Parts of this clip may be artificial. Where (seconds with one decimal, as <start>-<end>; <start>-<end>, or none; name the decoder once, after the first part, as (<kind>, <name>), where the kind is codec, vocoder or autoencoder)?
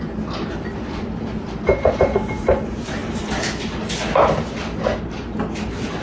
none